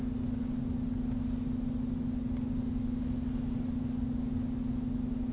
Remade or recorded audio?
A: recorded